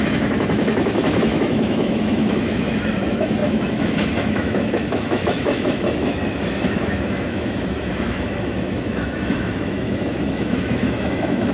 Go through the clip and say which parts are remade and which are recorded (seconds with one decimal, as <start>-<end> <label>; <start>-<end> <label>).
0.0-11.5 remade